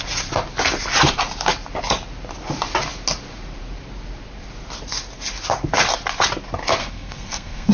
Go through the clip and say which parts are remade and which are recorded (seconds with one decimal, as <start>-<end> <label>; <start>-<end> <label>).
0.0-6.8 recorded; 6.8-7.7 remade

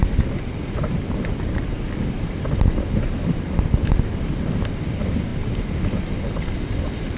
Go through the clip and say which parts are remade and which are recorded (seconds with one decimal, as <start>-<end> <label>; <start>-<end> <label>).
0.0-7.2 recorded

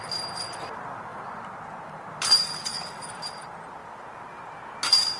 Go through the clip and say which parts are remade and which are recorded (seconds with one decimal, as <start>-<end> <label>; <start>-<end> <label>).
0.0-1.1 remade; 1.1-2.1 recorded; 2.1-5.2 remade

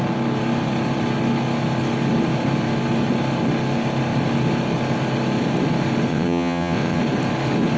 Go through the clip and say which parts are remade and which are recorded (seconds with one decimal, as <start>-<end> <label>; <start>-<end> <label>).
0.0-6.1 recorded; 6.1-7.0 remade; 7.0-7.8 recorded

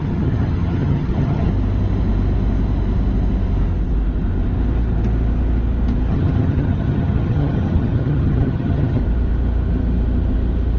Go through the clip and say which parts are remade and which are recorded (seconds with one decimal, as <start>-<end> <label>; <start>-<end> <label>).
0.0-1.5 remade; 1.5-6.1 recorded; 6.1-9.0 remade; 9.0-10.8 recorded

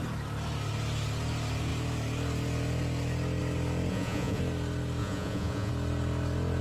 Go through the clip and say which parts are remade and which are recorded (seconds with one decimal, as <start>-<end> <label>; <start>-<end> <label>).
0.0-3.9 recorded; 3.9-4.4 remade; 4.4-5.0 recorded; 5.0-5.7 remade; 5.7-6.6 recorded

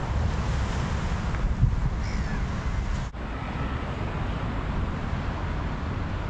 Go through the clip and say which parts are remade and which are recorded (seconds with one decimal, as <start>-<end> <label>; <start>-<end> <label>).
0.0-6.3 recorded

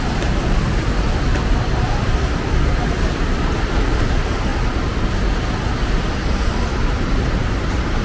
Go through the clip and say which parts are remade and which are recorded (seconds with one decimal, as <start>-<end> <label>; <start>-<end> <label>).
0.0-4.5 remade; 4.5-6.1 recorded; 6.1-8.0 remade